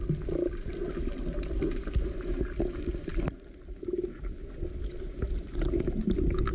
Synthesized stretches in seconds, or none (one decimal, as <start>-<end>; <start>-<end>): 3.1-3.7